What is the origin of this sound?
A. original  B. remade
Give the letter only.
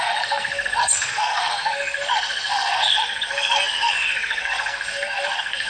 B